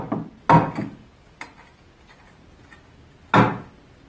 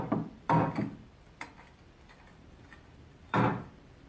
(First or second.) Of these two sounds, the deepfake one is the second